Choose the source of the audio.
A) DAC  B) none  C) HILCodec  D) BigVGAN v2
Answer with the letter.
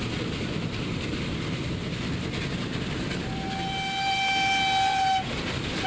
B